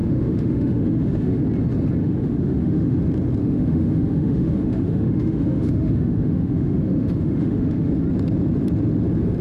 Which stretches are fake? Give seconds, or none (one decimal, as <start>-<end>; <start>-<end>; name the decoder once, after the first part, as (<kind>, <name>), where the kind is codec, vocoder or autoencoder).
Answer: 0.0-1.4 (autoencoder, DAC-VAE); 2.0-3.0; 3.4-7.9